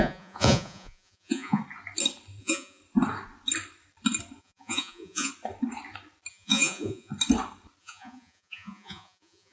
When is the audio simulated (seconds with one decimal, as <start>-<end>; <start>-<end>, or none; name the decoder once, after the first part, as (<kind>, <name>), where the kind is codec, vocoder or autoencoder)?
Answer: 0.0-1.6 (vocoder, Vocos); 2.4-2.8; 4.4-5.3; 6.3-7.1; 7.8-9.5